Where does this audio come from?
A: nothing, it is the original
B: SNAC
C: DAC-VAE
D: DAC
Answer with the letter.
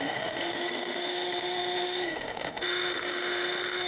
C